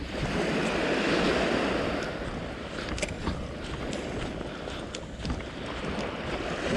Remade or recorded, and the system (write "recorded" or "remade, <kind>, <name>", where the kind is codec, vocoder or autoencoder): recorded